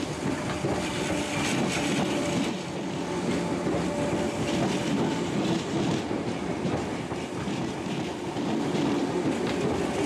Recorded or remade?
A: recorded